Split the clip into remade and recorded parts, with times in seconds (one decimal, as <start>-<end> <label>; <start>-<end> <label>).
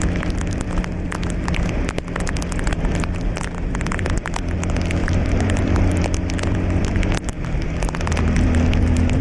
0.0-5.0 recorded; 5.0-5.9 remade; 5.9-9.2 recorded